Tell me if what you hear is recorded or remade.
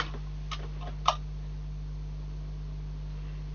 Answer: recorded